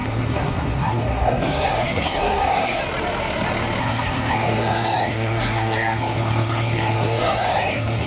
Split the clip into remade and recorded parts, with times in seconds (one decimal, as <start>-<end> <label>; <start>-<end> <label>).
0.0-2.8 remade; 2.8-3.8 recorded; 3.8-8.1 remade